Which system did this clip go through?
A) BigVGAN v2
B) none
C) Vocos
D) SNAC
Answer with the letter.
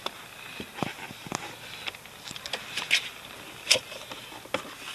B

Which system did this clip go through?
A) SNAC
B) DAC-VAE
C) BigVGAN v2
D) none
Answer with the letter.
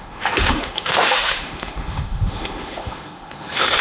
B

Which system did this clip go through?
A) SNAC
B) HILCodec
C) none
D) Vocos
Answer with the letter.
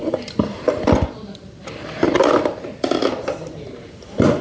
C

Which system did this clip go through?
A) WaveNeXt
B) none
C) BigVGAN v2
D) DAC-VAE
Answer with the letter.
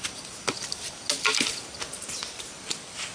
B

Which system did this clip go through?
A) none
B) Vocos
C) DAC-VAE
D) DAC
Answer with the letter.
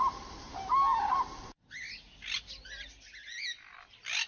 A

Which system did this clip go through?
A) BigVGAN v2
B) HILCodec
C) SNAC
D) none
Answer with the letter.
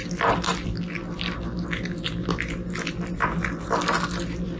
D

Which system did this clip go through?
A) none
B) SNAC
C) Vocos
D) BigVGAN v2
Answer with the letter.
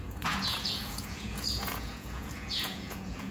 C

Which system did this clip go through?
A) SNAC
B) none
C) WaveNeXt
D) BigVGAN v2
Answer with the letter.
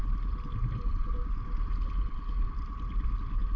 B